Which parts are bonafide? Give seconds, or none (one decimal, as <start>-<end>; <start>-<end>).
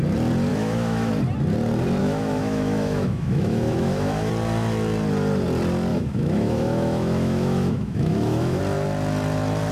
0.0-0.5; 1.1-2.0; 4.3-5.9; 8.6-9.7